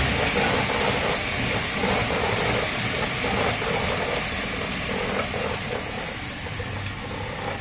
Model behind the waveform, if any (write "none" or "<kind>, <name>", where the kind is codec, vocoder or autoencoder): none